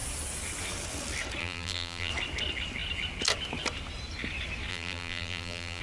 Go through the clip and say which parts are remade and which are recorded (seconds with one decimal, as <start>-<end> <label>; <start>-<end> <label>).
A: 0.0-1.4 recorded; 1.4-2.1 remade; 2.1-4.7 recorded; 4.7-5.8 remade